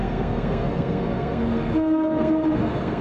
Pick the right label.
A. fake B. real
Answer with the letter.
A